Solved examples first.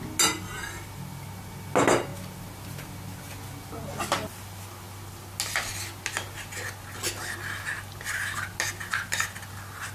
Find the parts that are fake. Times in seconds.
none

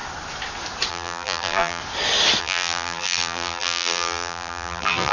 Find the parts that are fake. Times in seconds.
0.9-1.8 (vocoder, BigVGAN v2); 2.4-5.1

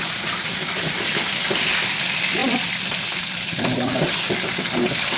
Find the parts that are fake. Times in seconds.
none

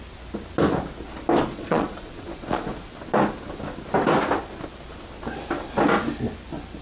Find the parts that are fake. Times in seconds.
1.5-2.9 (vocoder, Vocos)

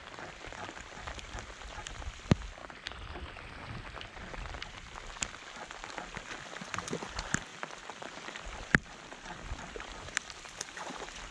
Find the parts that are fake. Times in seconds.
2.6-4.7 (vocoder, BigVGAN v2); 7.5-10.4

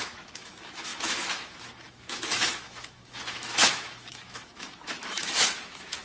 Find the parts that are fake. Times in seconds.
0.0-6.0 (autoencoder, DAC-VAE)

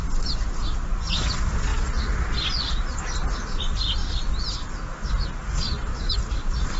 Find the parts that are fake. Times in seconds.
5.9-6.8 (vocoder, BigVGAN v2)

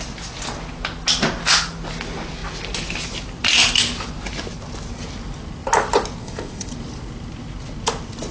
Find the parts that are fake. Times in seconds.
6.2-6.7 (codec, ZipCodec)